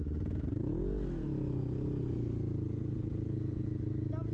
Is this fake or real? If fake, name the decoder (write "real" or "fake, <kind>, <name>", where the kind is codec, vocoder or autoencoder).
real